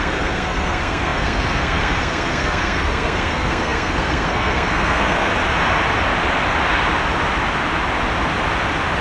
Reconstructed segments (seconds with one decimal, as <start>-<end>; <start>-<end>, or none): 0.0-5.3